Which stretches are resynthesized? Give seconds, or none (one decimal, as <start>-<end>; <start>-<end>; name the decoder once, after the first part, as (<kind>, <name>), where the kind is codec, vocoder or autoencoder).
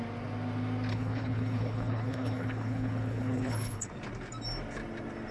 0.9-3.9 (codec, HILCodec)